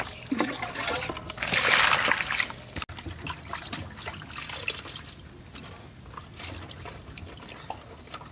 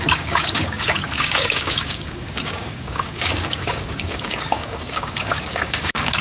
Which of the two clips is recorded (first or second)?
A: first